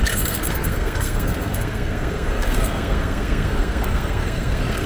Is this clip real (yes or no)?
no